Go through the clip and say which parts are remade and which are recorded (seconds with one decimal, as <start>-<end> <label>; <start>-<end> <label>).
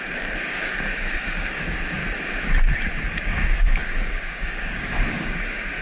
0.0-2.0 remade; 2.0-3.2 recorded; 3.2-5.8 remade